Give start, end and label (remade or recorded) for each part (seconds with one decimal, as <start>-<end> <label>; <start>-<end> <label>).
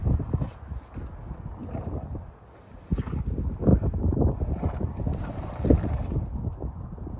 0.0-1.6 recorded; 1.6-2.3 remade; 2.3-7.2 recorded